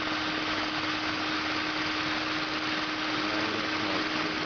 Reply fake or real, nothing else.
real